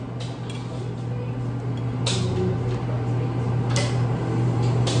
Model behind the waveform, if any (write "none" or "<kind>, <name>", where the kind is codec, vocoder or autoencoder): none